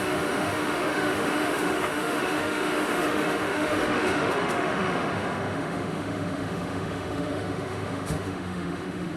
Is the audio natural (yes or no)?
no